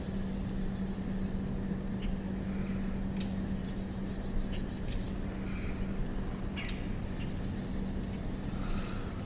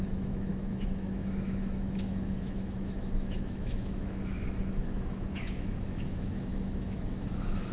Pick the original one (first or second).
first